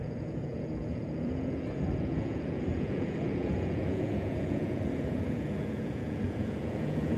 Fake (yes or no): yes